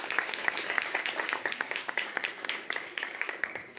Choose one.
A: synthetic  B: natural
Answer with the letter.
A